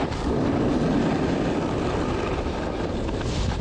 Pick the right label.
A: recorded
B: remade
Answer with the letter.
A